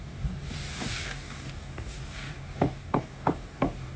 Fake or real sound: fake